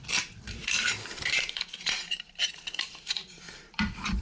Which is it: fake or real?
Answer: fake